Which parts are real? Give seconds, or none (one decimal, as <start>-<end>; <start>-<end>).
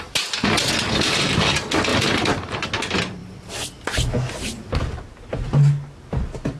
0.0-6.6